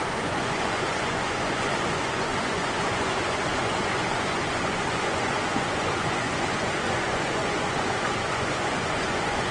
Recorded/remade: remade